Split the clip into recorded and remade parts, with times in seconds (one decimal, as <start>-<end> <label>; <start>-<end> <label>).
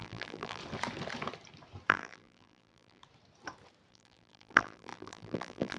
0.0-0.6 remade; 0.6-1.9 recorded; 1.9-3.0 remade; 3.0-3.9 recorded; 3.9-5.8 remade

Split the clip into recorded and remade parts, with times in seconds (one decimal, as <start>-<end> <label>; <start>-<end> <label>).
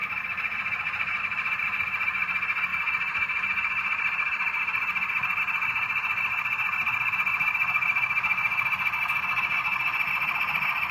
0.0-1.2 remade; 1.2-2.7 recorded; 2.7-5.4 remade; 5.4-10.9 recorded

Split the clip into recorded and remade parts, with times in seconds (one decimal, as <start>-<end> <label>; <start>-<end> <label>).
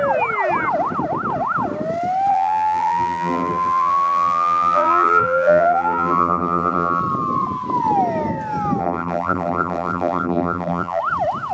0.0-2.3 recorded; 2.3-7.0 remade; 7.0-8.8 recorded; 8.8-11.0 remade; 11.0-11.5 recorded